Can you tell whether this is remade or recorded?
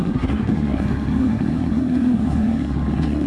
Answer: remade